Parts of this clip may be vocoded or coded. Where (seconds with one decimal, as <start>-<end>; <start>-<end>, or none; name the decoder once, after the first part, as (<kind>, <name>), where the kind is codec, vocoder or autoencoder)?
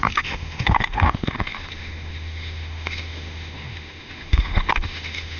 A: 0.0-5.4 (autoencoder, DAC-VAE)